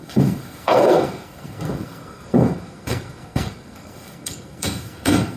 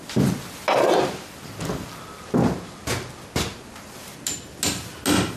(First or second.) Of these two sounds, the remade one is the first